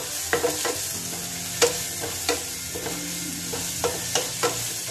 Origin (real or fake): real